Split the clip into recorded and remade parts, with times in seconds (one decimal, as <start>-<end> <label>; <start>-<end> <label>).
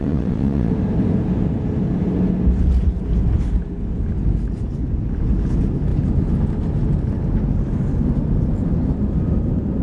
0.0-0.7 remade; 0.7-9.8 recorded